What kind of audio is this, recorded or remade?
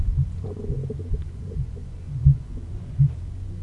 remade